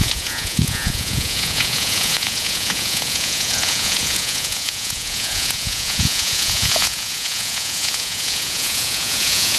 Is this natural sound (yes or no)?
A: no